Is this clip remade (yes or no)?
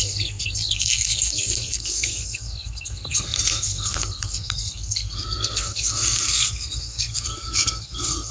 yes